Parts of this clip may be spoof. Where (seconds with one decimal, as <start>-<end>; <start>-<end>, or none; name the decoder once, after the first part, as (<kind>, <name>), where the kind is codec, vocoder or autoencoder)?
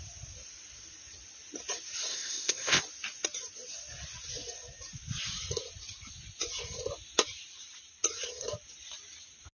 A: 2.1-2.8 (codec, ZipCodec)